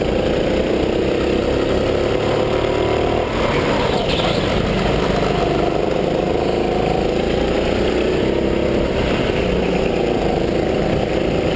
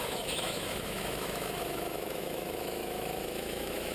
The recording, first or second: first